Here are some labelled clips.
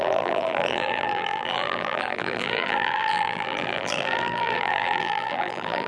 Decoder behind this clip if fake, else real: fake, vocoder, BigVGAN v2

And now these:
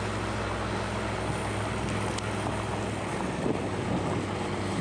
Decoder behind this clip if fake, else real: real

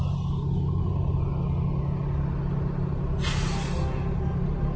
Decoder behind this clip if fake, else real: real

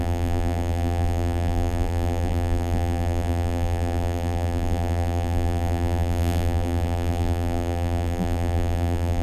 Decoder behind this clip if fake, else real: fake, vocoder, BigVGAN v2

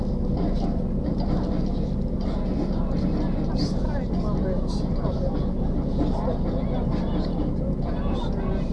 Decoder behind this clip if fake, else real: real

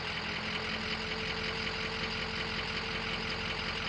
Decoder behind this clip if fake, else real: real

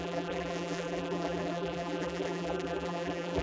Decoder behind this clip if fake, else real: fake, vocoder, BigVGAN v2